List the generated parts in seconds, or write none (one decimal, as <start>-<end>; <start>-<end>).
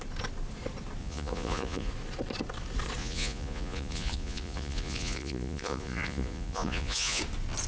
1.0-1.9; 3.0-7.2